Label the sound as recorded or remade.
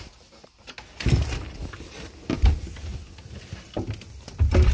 recorded